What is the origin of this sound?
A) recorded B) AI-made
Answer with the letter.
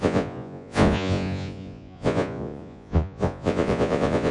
B